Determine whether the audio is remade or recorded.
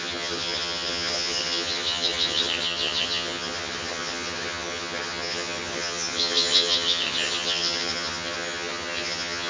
remade